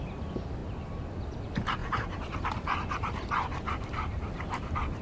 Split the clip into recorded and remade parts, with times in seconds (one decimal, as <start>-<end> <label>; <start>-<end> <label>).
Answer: 0.0-1.8 recorded; 1.8-5.0 remade